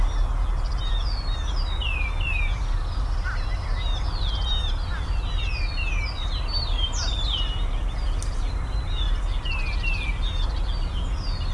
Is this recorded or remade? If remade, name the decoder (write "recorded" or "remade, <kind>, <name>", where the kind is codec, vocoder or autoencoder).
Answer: recorded